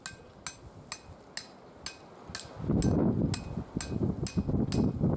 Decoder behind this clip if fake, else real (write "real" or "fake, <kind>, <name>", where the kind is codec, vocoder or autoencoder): real